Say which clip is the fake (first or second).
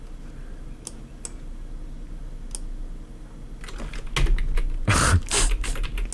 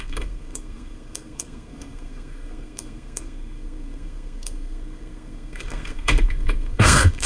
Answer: second